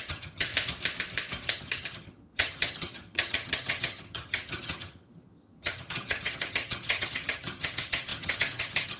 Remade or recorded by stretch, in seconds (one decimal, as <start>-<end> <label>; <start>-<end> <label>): 0.0-0.5 remade; 0.5-1.5 recorded; 1.5-9.0 remade